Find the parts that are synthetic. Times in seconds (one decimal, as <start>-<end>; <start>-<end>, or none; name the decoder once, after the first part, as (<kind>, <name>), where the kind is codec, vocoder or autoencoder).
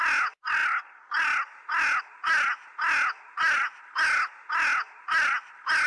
none